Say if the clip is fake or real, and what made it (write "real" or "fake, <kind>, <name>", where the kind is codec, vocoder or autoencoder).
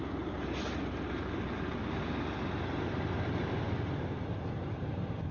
real